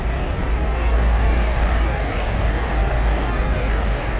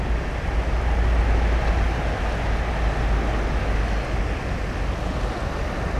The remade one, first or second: first